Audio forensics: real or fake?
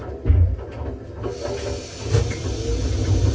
real